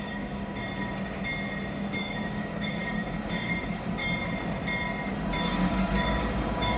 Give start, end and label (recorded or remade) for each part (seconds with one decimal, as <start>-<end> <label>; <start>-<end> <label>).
0.0-0.6 remade; 0.6-2.0 recorded; 2.0-4.0 remade; 4.0-5.1 recorded; 5.1-6.8 remade